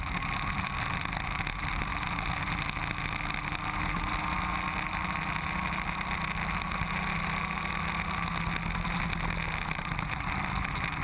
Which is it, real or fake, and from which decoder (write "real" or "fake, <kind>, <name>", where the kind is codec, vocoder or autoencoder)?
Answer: real